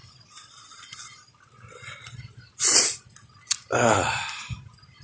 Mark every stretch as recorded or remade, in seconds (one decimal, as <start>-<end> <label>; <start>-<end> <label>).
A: 0.0-5.0 recorded